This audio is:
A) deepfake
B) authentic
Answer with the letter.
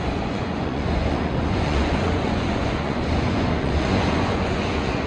A